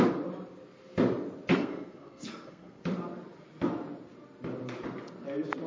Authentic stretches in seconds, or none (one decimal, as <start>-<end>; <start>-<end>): 0.0-1.5; 2.8-5.7